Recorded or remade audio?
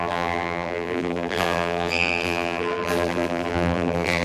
remade